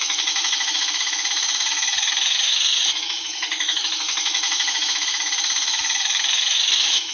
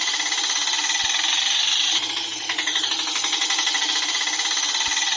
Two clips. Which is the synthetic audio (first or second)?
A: first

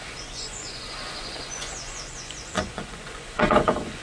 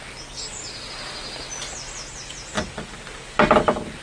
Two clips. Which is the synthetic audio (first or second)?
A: first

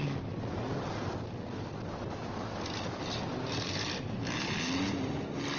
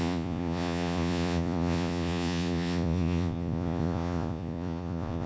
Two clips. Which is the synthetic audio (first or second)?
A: second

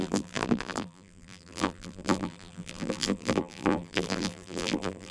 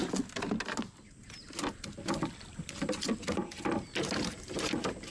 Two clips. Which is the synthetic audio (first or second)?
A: first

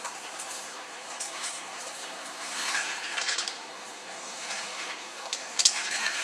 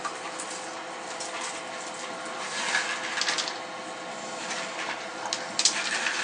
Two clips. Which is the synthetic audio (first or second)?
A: first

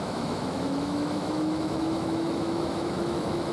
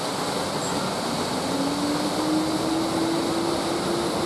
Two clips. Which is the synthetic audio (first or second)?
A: first